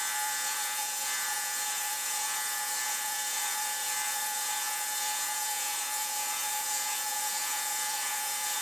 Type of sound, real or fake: fake